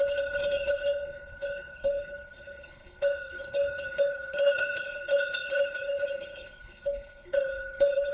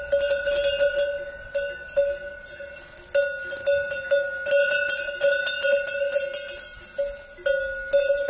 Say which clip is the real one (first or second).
second